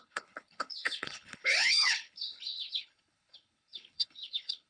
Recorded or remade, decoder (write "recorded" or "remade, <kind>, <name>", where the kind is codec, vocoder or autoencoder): remade, codec, HILCodec